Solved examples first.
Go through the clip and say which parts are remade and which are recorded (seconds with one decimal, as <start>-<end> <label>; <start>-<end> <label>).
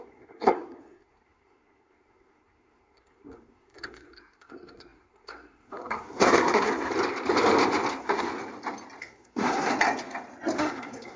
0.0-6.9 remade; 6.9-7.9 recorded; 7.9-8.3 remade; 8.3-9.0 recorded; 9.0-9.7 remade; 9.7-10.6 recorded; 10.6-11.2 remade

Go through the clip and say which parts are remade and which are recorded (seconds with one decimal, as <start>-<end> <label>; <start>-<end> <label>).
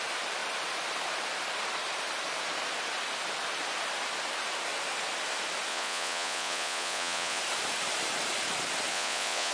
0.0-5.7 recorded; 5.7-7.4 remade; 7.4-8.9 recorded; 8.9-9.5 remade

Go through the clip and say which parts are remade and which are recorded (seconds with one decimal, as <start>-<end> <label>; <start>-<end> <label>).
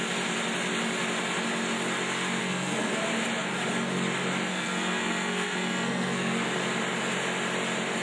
0.0-2.4 recorded; 2.4-2.9 remade; 2.9-4.5 recorded; 4.5-6.4 remade; 6.4-8.0 recorded